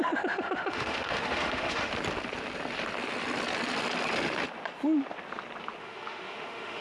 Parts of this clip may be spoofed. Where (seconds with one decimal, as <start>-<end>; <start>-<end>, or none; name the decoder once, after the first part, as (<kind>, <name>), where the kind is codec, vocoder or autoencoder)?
0.0-1.9 (autoencoder, DAC-VAE); 5.8-6.8